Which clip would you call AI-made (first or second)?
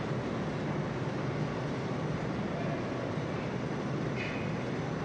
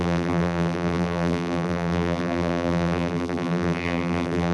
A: second